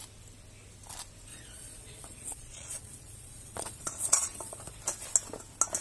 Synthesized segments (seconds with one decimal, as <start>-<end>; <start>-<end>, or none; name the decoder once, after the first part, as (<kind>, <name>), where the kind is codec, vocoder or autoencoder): 1.3-4.8 (vocoder, Vocos)